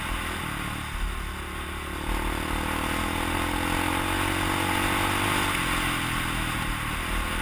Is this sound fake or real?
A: real